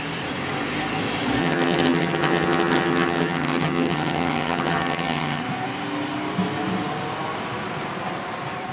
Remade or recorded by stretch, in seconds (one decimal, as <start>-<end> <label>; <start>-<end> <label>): 0.0-1.4 recorded; 1.4-5.4 remade; 5.4-8.7 recorded